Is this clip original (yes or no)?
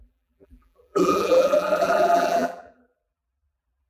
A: no